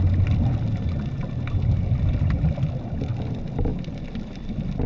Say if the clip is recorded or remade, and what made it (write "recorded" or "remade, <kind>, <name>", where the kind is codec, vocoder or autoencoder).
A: recorded